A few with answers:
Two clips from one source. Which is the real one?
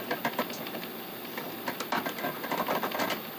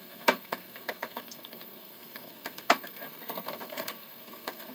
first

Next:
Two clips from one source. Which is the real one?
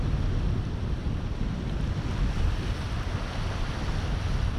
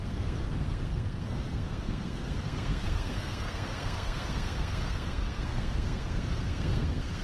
first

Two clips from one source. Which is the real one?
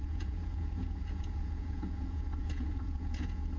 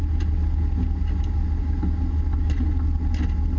second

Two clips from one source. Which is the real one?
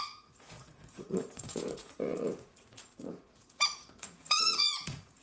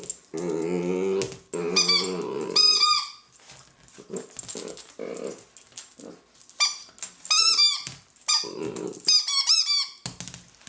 second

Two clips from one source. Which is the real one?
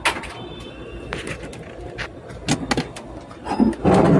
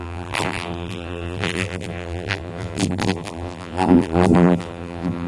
first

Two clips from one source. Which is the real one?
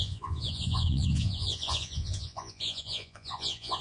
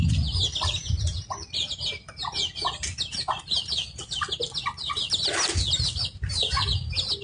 second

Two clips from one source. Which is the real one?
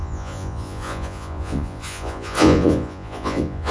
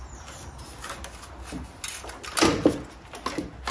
second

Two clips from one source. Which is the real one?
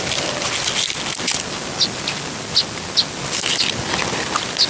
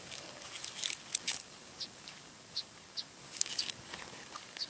first